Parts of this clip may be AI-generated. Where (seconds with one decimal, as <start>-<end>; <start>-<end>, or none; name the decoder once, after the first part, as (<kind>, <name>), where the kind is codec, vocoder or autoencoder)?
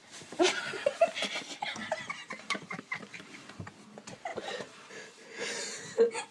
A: 0.0-1.3 (vocoder, BigVGAN v2); 2.2-3.6; 4.3-4.9